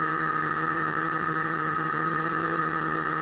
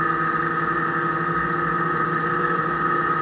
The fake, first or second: first